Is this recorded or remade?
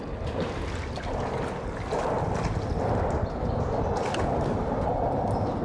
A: recorded